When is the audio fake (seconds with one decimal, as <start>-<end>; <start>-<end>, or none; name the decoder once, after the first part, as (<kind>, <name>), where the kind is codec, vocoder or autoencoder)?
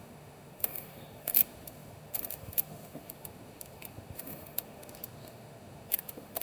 0.0-6.4 (autoencoder, DAC-VAE)